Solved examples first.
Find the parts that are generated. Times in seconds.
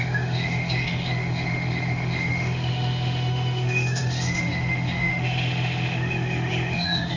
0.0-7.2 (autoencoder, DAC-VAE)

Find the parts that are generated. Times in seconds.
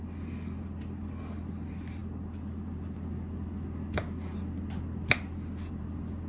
none